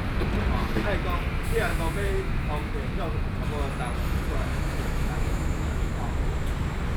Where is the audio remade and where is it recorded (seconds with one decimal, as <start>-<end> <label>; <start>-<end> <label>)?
0.0-1.7 recorded; 1.7-2.9 remade; 2.9-4.5 recorded; 4.5-5.9 remade; 5.9-7.0 recorded